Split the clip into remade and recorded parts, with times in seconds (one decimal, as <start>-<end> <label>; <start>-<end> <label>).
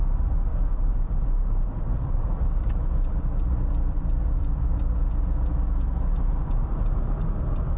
0.0-0.5 recorded; 0.5-5.1 remade; 5.1-7.8 recorded